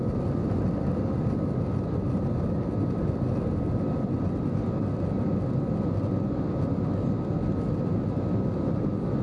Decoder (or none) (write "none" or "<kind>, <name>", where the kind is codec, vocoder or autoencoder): none